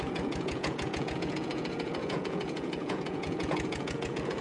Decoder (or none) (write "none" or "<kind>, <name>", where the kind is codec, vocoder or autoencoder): vocoder, Vocos